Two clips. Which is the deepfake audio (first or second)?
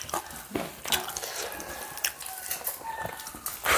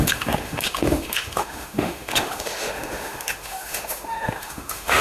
second